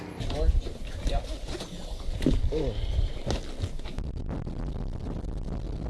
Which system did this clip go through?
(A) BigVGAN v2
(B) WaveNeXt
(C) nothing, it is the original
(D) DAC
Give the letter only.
C